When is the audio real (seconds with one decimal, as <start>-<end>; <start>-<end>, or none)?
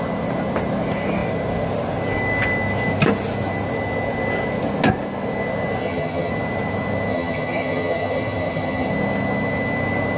0.0-5.8; 6.3-7.1; 8.9-10.2